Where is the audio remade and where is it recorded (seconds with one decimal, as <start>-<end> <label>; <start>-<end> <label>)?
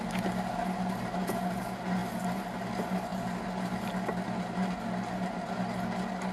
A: 0.0-6.3 recorded